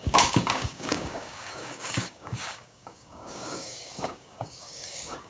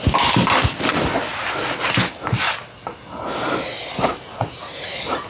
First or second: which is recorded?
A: second